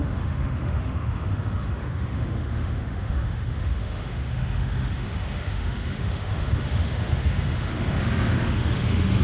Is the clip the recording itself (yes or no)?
no